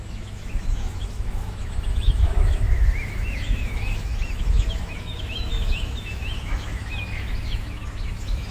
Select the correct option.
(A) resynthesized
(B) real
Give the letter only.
A